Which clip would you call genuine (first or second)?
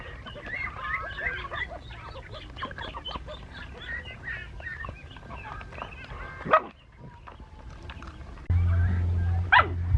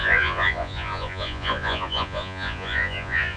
first